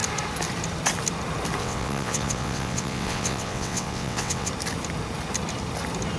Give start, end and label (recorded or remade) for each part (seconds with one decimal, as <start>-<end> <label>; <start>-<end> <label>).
0.0-1.6 recorded; 1.6-4.5 remade; 4.5-6.2 recorded